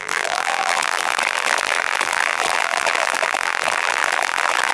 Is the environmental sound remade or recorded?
remade